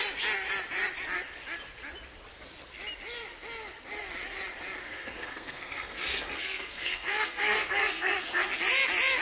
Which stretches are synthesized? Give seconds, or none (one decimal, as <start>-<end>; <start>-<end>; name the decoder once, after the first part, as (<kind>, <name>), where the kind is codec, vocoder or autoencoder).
4.8-8.5 (codec, SNAC)

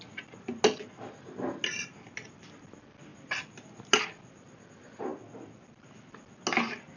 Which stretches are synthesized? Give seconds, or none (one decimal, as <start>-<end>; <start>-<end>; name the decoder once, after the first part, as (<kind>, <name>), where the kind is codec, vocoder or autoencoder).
none

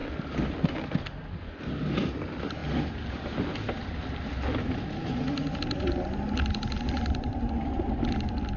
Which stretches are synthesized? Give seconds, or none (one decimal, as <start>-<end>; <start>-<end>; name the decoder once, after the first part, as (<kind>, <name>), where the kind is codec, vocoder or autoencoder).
none

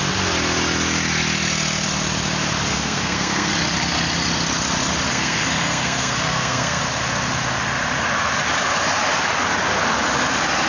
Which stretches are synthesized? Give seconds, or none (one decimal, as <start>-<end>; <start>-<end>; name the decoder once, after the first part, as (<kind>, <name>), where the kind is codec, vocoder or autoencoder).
2.7-3.5 (codec, SNAC); 5.1-6.8